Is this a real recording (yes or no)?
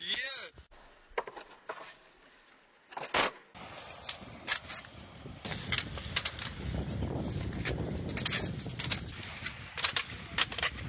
yes